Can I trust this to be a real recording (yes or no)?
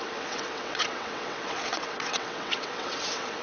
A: no